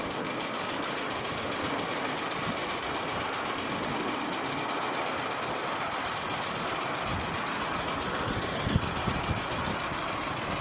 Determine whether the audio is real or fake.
real